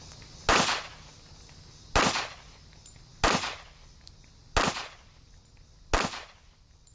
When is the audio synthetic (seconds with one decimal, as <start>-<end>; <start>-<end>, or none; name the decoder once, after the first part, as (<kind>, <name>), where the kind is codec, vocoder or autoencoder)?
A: none